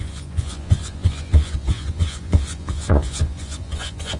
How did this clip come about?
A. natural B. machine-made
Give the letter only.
B